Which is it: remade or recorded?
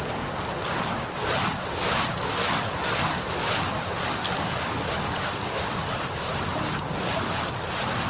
recorded